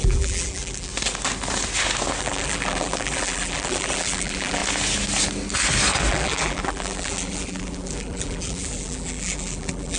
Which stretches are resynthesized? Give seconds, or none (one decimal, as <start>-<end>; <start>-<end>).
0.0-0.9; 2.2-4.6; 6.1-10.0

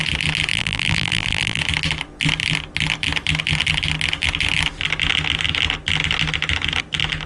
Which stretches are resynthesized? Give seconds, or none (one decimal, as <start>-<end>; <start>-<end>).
0.5-1.6

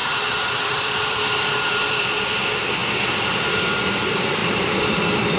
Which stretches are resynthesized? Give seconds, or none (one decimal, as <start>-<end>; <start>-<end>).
0.0-2.4; 2.8-3.4; 4.4-5.4

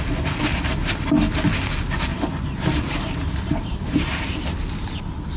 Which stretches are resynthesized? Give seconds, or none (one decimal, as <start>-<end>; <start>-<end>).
0.5-1.1; 2.1-5.0